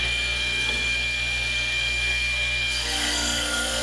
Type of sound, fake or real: fake